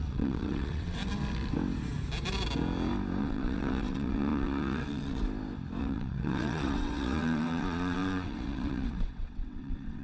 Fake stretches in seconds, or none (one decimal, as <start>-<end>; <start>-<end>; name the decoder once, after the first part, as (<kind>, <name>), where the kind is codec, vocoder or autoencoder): 0.0-1.0 (vocoder, WaveNeXt); 3.2-5.2; 5.8-10.0